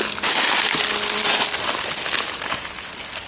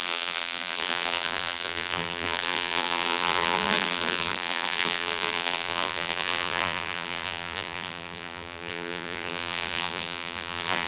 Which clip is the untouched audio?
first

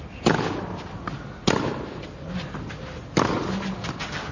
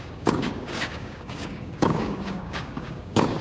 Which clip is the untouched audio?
first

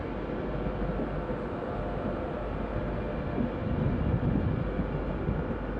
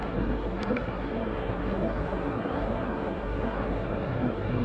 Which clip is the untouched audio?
first